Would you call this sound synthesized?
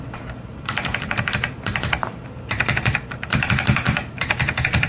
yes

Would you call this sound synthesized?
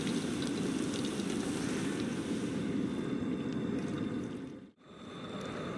no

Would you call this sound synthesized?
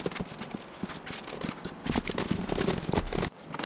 no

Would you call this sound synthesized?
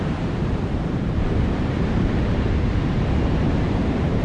yes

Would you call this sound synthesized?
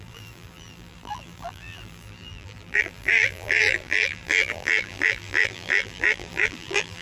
yes